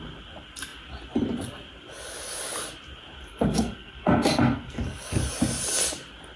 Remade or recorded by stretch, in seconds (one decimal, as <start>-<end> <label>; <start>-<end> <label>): 0.0-3.3 recorded; 3.3-5.2 remade; 5.2-6.4 recorded